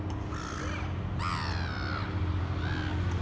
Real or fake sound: real